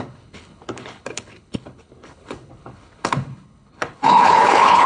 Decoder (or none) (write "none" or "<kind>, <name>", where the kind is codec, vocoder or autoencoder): codec, HILCodec